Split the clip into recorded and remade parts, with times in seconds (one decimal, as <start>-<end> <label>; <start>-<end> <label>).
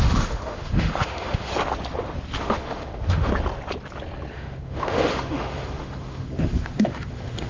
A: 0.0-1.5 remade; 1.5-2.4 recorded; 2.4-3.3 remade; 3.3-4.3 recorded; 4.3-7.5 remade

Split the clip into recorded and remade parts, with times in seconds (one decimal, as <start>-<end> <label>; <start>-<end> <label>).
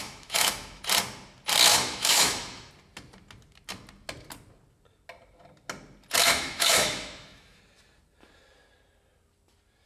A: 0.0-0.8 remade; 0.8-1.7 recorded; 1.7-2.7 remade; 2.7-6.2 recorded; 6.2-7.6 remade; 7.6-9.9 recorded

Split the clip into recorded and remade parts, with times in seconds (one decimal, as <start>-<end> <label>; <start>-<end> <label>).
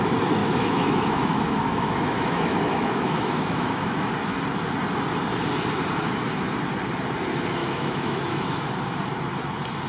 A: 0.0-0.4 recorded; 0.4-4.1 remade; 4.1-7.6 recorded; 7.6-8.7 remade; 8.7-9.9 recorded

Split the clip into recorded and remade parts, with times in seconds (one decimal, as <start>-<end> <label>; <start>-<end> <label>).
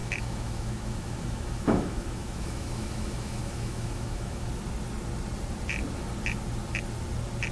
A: 0.0-4.5 remade; 4.5-7.5 recorded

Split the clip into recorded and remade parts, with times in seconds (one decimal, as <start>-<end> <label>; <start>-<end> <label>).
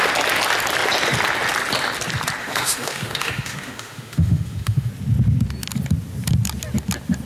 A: 0.0-2.4 recorded; 2.4-4.9 remade; 4.9-7.3 recorded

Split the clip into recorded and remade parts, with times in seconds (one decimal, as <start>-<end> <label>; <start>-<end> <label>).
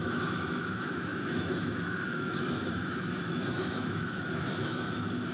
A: 0.0-5.3 remade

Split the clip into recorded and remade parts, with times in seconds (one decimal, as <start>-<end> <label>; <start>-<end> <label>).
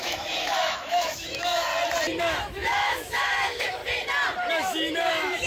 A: 0.0-1.7 remade; 1.7-2.2 recorded; 2.2-3.8 remade; 3.8-4.5 recorded; 4.5-5.5 remade